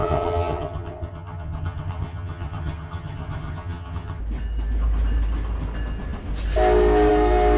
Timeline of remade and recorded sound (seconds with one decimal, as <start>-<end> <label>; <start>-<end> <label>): 0.0-4.2 remade; 4.2-7.6 recorded